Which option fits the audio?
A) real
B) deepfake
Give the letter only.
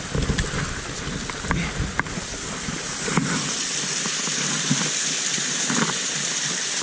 A